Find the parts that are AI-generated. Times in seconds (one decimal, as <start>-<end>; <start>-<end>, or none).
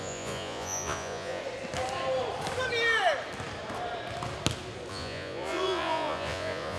0.0-1.4; 4.9-6.8